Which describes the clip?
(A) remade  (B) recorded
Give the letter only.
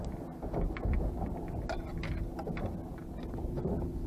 B